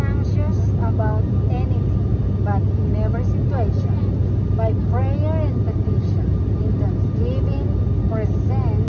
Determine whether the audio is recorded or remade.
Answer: recorded